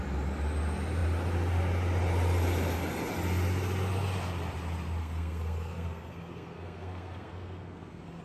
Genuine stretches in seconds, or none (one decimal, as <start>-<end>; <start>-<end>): 0.0-5.0